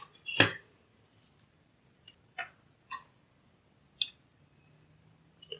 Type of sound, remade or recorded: recorded